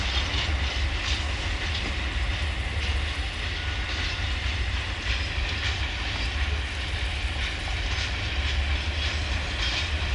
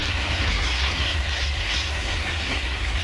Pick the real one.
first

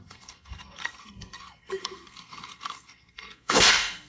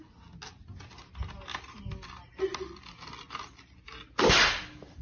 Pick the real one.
second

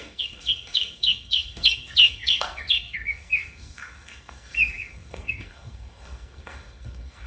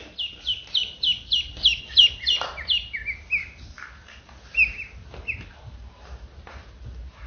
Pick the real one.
second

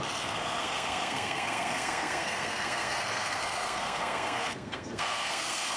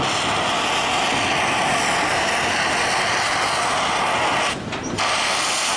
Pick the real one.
second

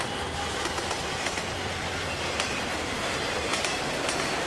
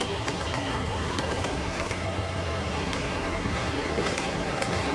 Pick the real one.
first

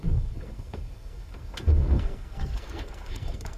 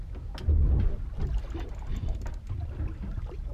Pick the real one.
second